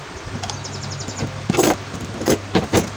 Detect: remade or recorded recorded